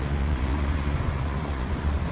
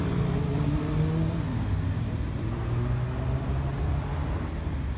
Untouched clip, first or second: second